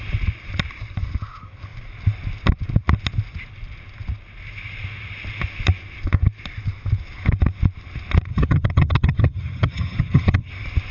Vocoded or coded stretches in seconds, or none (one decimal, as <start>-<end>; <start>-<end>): 8.3-10.5